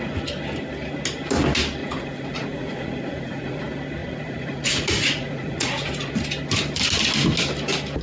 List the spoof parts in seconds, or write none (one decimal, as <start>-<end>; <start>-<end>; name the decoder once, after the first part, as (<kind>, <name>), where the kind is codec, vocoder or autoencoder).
1.8-3.6 (vocoder, Vocos); 4.0-6.1

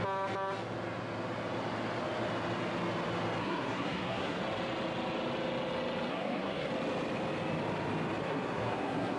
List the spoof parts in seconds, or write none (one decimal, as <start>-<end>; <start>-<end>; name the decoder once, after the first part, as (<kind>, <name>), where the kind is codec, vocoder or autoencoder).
3.4-4.4 (codec, SNAC); 6.1-6.7; 8.2-9.2

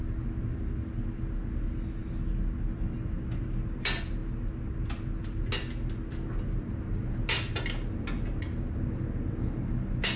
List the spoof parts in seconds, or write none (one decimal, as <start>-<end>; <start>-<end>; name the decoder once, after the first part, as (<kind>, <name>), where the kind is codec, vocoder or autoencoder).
none

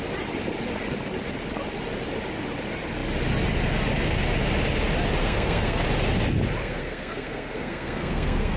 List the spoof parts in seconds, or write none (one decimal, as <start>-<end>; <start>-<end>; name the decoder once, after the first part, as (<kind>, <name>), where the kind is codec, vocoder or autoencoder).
5.2-5.8 (codec, SNAC); 6.6-8.6

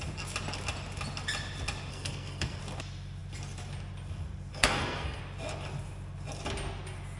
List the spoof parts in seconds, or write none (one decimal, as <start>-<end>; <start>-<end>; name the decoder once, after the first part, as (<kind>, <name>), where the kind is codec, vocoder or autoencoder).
1.9-2.6 (codec, SNAC); 4.5-5.2

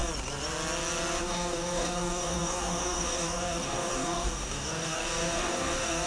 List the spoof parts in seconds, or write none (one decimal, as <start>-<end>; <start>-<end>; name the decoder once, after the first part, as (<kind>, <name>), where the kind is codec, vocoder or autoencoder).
1.2-6.1 (codec, DAC)

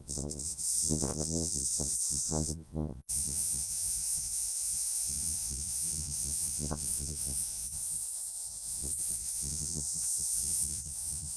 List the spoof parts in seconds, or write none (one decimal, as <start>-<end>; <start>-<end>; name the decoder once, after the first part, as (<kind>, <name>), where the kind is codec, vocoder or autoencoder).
0.0-11.4 (vocoder, Vocos)

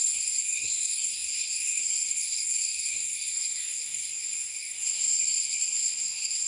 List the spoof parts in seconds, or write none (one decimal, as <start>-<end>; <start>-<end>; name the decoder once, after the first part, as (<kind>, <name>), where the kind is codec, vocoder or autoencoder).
0.0-6.5 (codec, SNAC)